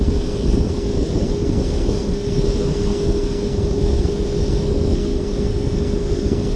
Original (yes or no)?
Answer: no